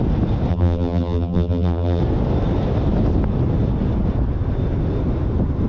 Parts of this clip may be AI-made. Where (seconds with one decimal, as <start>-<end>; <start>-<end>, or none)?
0.5-2.0